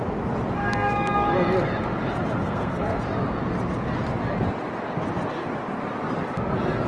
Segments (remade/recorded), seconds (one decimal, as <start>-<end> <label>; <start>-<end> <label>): 0.0-0.6 recorded; 0.6-1.3 remade; 1.3-2.4 recorded; 2.4-3.0 remade; 3.0-6.9 recorded